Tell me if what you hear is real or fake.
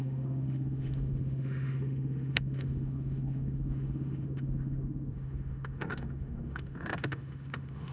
fake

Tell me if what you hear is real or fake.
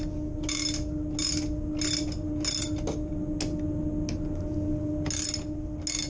real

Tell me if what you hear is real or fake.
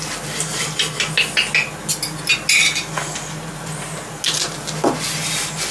real